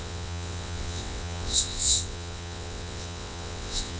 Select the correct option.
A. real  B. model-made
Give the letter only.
B